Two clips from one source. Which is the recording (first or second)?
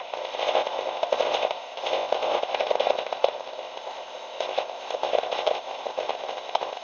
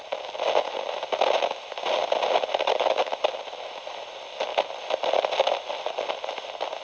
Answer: second